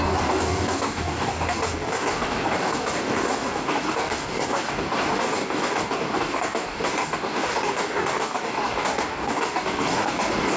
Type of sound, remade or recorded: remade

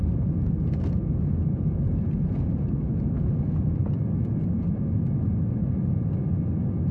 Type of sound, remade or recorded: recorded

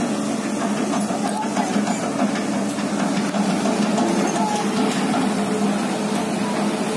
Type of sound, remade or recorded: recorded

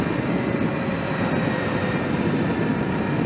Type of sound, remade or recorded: recorded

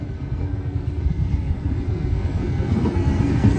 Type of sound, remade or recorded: remade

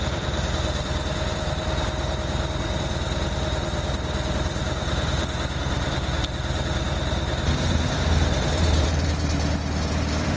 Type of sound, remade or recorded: remade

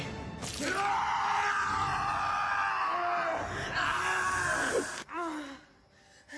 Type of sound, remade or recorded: recorded